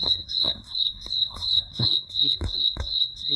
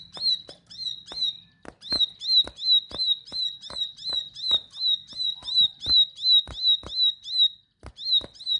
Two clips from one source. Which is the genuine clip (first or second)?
second